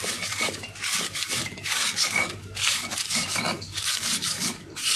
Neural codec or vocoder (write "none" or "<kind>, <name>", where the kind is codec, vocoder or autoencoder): codec, DAC